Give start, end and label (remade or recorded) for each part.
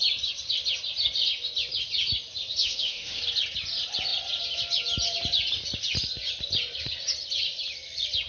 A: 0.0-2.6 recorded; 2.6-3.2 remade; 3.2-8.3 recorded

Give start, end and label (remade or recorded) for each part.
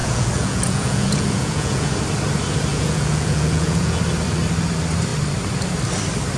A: 0.0-1.9 remade; 1.9-2.7 recorded; 2.7-4.0 remade; 4.0-6.4 recorded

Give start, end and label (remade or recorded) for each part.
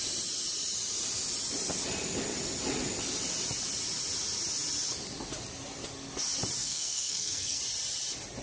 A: 0.0-6.6 recorded; 6.6-7.6 remade; 7.6-8.4 recorded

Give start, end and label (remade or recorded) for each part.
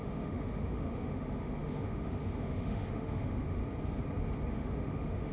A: 0.0-3.6 remade; 3.6-4.5 recorded; 4.5-5.3 remade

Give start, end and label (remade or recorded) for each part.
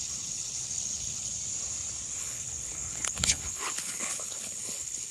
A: 0.0-1.3 remade; 1.3-2.2 recorded; 2.2-5.1 remade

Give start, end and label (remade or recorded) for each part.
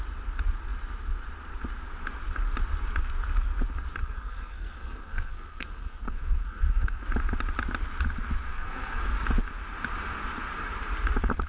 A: 0.0-4.0 recorded; 4.0-7.0 remade; 7.0-8.5 recorded; 8.5-9.0 remade; 9.0-11.5 recorded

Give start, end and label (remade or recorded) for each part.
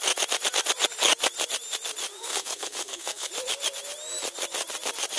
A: 0.0-2.2 recorded; 2.2-3.3 remade; 3.3-5.2 recorded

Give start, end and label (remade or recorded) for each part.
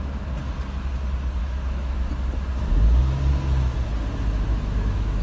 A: 0.0-1.4 recorded; 1.4-2.1 remade; 2.1-4.5 recorded; 4.5-5.2 remade